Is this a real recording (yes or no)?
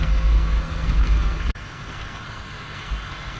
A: no